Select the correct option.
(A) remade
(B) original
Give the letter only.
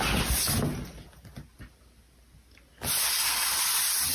B